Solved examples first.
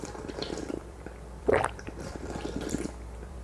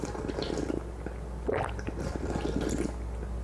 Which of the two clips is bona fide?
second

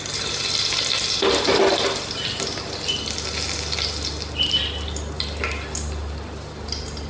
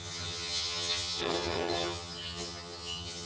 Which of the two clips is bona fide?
first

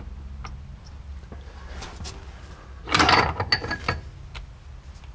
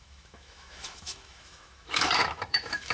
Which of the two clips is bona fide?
first